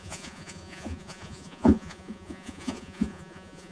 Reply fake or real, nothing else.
fake